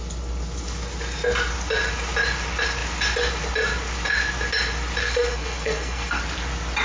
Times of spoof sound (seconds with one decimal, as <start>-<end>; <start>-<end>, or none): 5.0-6.2